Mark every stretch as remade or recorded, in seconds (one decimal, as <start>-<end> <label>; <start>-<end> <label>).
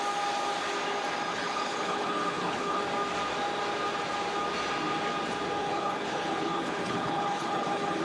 0.0-1.3 recorded; 1.3-2.8 remade; 2.8-5.6 recorded; 5.6-8.0 remade